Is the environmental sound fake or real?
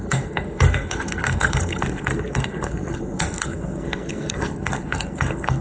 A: fake